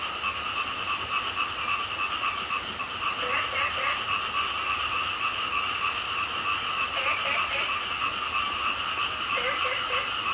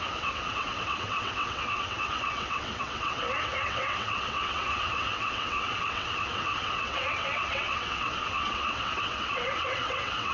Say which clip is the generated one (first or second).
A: second